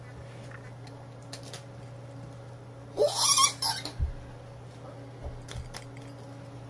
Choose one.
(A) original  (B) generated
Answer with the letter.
A